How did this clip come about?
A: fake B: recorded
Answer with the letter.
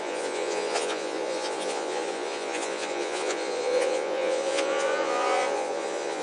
A